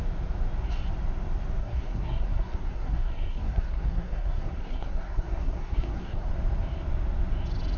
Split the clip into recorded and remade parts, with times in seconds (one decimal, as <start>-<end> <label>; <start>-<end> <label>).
0.0-1.6 recorded; 1.6-6.3 remade; 6.3-7.8 recorded